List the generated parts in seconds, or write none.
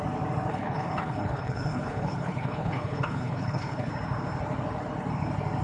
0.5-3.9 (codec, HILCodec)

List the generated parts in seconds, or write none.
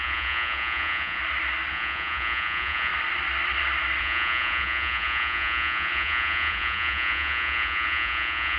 0.0-1.2 (vocoder, Vocos); 1.7-2.9; 4.0-8.6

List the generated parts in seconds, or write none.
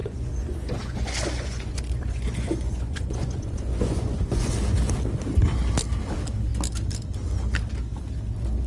0.0-4.5 (vocoder, Vocos)